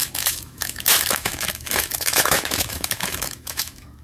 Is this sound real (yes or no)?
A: no